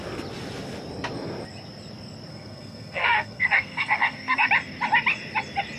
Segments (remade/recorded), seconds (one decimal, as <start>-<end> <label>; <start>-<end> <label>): 0.0-2.3 recorded; 2.3-4.5 remade; 4.5-5.8 recorded